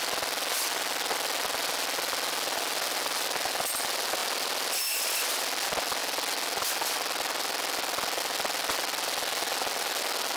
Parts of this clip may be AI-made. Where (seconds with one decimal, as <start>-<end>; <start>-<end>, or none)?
none